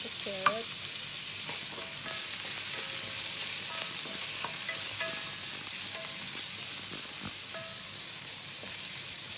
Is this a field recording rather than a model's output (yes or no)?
yes